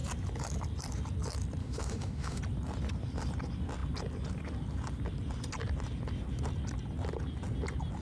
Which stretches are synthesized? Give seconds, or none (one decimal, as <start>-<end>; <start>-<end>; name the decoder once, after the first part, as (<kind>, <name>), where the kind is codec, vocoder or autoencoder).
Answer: 1.6-2.4 (autoencoder, DAC-VAE)